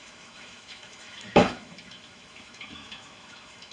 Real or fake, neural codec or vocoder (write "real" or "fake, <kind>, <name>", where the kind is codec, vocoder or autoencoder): fake, autoencoder, DAC-VAE